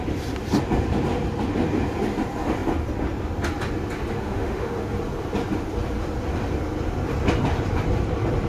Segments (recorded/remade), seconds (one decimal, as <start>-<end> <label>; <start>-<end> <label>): 0.0-4.2 recorded; 4.2-4.7 remade; 4.7-8.5 recorded